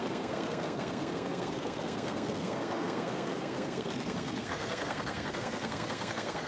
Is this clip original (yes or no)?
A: no